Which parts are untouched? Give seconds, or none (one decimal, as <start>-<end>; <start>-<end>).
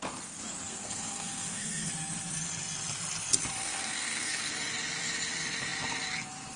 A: 0.0-0.7; 1.9-3.6; 4.5-6.6